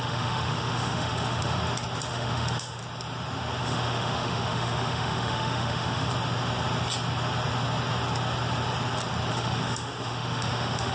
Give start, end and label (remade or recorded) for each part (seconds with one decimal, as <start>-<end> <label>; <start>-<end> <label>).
0.0-1.6 remade; 1.6-2.1 recorded; 2.1-2.8 remade; 2.8-3.6 recorded; 3.6-6.1 remade; 6.1-9.3 recorded; 9.3-10.9 remade